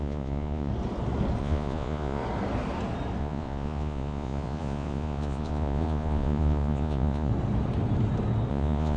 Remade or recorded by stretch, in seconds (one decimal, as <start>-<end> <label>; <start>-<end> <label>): 0.0-0.7 remade; 0.7-1.4 recorded; 1.4-2.2 remade; 2.2-3.2 recorded; 3.2-7.3 remade; 7.3-8.5 recorded; 8.5-9.0 remade